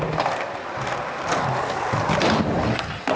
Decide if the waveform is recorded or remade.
recorded